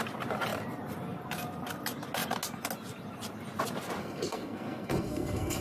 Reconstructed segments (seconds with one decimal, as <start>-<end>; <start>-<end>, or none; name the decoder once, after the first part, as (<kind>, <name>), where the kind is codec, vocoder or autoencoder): 4.0-5.6 (codec, SNAC)